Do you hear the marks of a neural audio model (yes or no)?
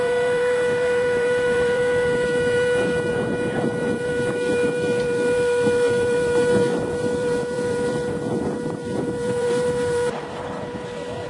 yes